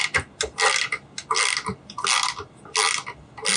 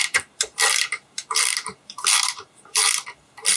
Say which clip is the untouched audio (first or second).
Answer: first